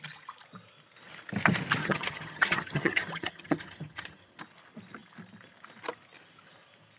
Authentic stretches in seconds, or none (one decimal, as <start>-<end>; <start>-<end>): 0.0-1.8; 4.4-7.0